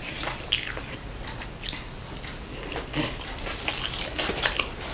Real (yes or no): yes